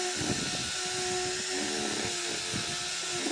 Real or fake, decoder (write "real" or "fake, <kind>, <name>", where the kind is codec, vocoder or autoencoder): real